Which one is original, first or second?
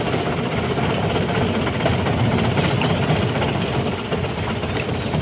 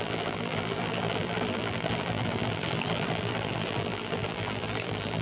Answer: first